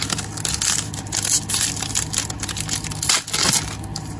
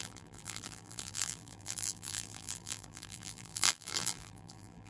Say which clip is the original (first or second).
first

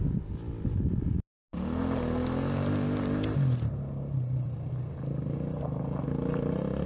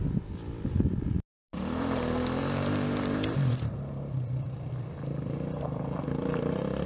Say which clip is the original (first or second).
first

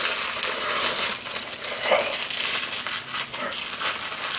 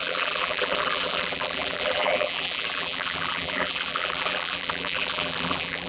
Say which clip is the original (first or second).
first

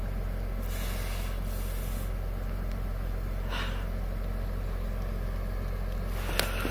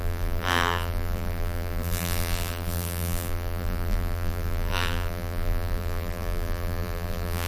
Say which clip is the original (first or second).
first